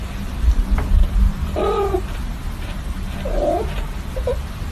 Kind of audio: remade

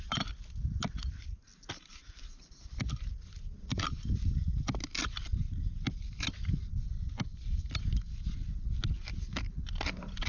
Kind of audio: recorded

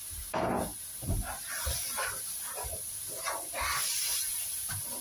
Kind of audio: recorded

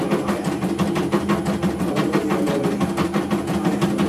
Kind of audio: recorded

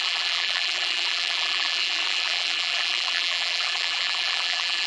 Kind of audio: remade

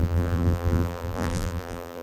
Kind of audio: remade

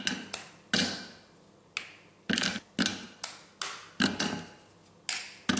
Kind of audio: recorded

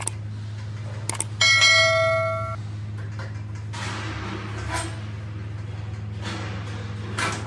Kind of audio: recorded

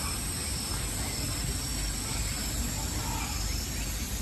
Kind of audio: recorded